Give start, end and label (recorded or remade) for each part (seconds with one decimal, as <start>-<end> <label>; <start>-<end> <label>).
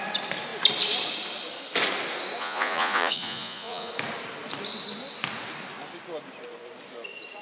0.0-2.4 recorded; 2.4-3.9 remade; 3.9-7.4 recorded